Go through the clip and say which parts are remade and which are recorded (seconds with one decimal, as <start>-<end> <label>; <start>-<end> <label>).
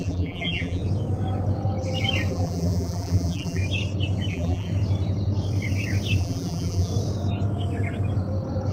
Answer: 0.0-0.8 remade; 0.8-2.3 recorded; 2.3-3.6 remade; 3.6-4.3 recorded; 4.3-4.7 remade; 4.7-6.2 recorded; 6.2-6.9 remade; 6.9-8.7 recorded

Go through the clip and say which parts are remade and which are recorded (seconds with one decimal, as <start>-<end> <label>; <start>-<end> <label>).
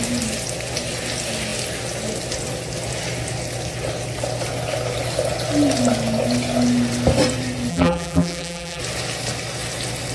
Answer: 0.0-7.7 recorded; 7.7-8.8 remade; 8.8-10.1 recorded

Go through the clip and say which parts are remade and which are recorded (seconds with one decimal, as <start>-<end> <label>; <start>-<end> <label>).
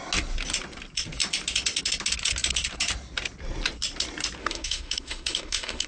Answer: 0.0-4.4 recorded; 4.4-5.9 remade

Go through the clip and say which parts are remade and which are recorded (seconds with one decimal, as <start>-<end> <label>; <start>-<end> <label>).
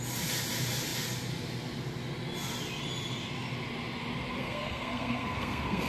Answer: 0.0-4.4 recorded; 4.4-5.9 remade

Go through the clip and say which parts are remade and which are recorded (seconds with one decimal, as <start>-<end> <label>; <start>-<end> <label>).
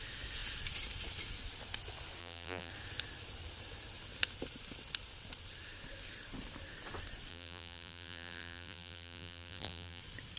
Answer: 0.0-2.2 recorded; 2.2-2.7 remade; 2.7-7.3 recorded; 7.3-10.0 remade; 10.0-10.4 recorded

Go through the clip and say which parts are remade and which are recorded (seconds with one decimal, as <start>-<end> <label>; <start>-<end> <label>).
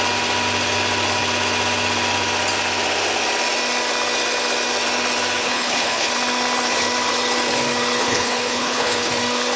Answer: 0.0-5.4 recorded; 5.4-6.1 remade; 6.1-8.0 recorded; 8.0-9.1 remade; 9.1-9.6 recorded